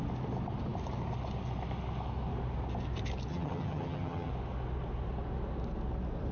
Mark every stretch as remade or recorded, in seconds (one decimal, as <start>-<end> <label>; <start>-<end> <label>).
0.0-3.3 recorded; 3.3-4.3 remade; 4.3-6.3 recorded